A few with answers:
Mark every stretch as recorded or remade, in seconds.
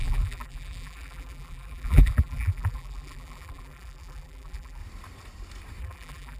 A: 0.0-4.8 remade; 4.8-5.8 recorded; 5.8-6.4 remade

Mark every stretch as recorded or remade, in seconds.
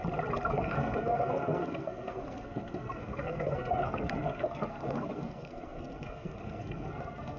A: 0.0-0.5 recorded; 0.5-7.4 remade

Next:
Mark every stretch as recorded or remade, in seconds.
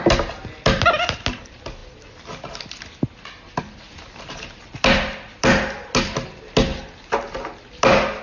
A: 0.0-8.2 recorded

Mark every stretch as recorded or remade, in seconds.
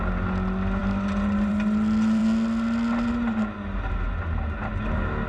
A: 0.0-5.3 recorded